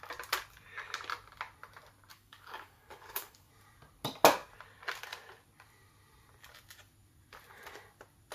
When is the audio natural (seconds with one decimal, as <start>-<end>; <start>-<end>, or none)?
0.0-2.1; 3.5-8.3